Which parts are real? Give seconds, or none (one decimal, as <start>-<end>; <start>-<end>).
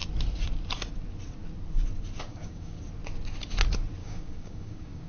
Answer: 0.0-2.3; 2.8-4.0